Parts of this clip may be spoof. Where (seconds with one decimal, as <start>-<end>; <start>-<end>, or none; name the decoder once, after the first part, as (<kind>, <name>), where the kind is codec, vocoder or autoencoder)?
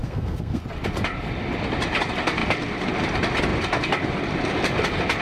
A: 0.0-0.6 (codec, SNAC)